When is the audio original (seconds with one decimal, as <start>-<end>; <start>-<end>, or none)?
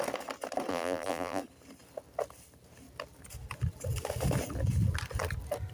0.0-0.7; 1.4-5.7